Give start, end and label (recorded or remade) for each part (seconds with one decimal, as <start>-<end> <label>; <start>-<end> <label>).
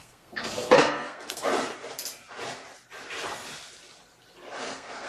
0.0-1.5 remade; 1.5-4.6 recorded; 4.6-5.1 remade